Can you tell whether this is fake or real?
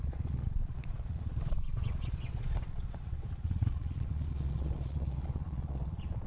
fake